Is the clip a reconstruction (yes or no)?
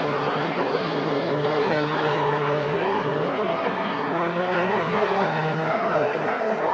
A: yes